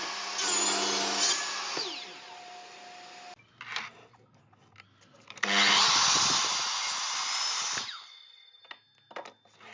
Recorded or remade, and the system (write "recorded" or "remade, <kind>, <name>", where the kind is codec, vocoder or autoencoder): recorded